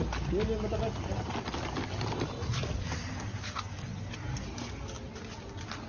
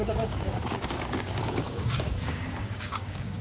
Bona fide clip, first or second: first